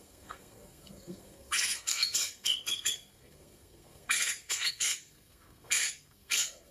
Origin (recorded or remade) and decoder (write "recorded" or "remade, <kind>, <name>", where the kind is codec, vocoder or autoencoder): remade, codec, SNAC